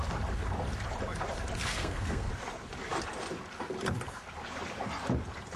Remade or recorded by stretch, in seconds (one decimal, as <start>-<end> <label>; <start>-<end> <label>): 0.0-1.7 recorded; 1.7-2.3 remade; 2.3-5.6 recorded